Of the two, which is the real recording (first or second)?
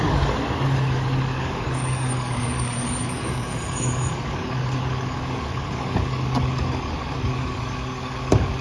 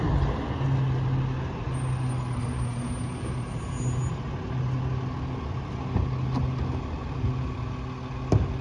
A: second